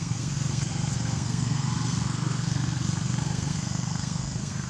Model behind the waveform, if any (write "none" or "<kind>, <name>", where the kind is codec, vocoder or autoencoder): codec, SNAC